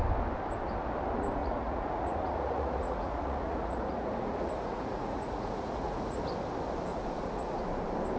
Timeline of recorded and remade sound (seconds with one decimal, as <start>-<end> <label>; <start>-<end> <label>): 0.0-1.4 recorded; 1.4-6.2 remade; 6.2-6.9 recorded; 6.9-7.6 remade; 7.6-8.2 recorded